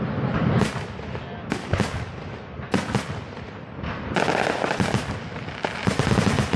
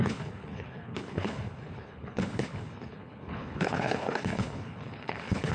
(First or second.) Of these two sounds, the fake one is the second